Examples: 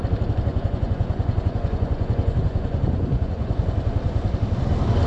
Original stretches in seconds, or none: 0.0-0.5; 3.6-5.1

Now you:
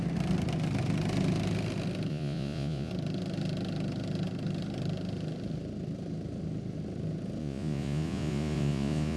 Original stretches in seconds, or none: 0.0-2.1; 2.9-7.4

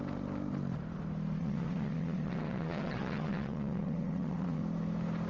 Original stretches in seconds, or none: 0.0-1.4; 4.6-5.3

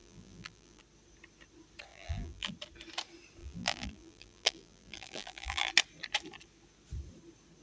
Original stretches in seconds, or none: 0.8-1.9; 2.5-3.4; 5.7-7.6